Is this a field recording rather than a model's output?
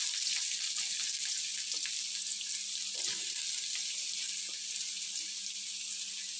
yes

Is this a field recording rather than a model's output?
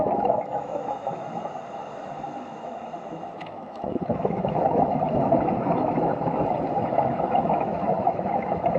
no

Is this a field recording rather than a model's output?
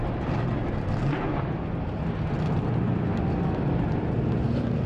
yes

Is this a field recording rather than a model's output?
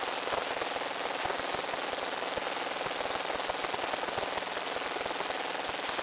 yes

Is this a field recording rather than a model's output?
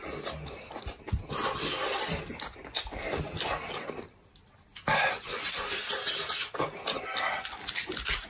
yes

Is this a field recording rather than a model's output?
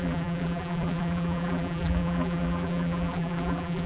no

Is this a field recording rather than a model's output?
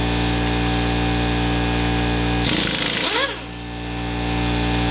yes